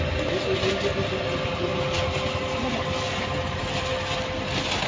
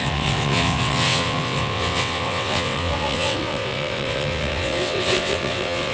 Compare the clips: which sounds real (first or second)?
first